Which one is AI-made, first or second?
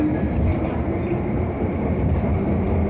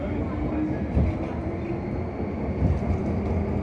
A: first